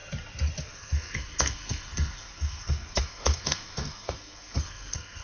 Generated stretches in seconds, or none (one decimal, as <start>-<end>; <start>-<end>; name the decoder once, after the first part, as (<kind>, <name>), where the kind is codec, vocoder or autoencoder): 0.6-5.2 (codec, SNAC)